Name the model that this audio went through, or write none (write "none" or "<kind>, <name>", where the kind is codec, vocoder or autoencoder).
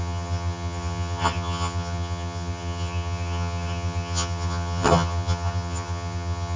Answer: vocoder, HiFi-GAN